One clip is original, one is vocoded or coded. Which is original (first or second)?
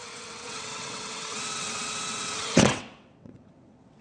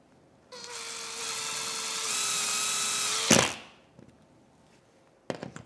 second